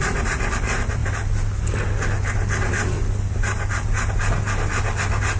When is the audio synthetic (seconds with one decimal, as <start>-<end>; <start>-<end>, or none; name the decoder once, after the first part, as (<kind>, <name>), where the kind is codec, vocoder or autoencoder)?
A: none